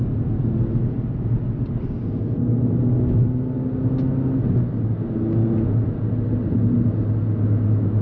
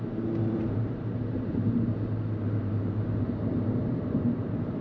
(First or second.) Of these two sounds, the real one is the first